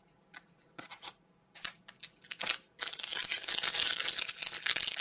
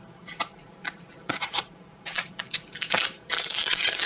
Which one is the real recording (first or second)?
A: first